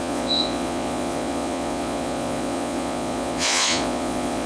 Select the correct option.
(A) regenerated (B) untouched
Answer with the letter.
A